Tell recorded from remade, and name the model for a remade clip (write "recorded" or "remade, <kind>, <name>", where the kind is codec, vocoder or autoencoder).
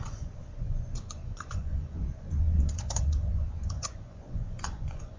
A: remade, vocoder, Vocos